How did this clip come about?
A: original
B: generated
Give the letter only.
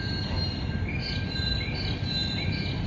A